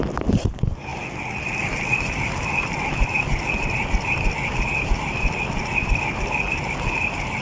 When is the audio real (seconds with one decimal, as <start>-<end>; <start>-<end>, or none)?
0.0-7.4